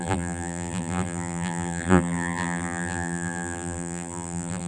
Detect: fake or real fake